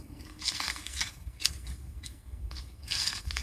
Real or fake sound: fake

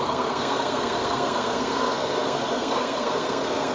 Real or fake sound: fake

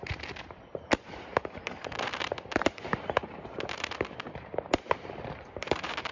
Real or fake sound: fake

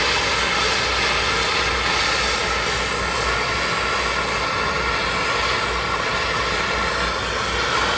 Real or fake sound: real